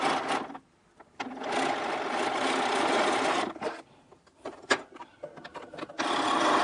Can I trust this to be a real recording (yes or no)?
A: yes